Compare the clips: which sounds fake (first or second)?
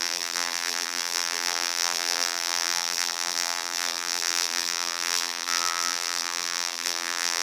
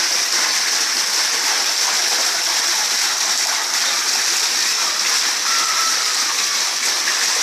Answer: first